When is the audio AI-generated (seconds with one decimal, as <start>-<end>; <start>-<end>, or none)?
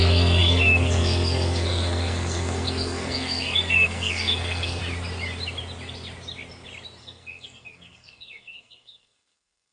0.0-4.8; 7.0-9.7